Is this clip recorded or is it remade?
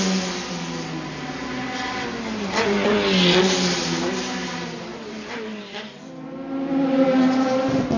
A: recorded